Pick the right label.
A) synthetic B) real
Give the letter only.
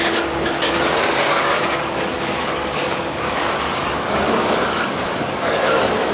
A